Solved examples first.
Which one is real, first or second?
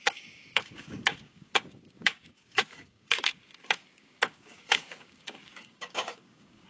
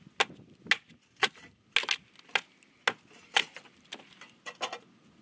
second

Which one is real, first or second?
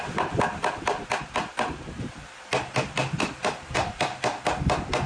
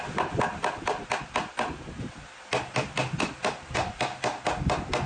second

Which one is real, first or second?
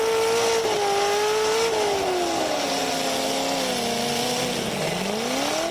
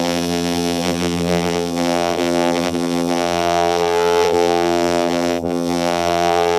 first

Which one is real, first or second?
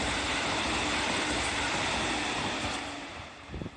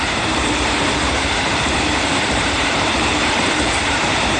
first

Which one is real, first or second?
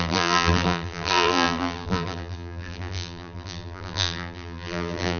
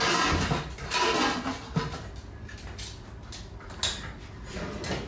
second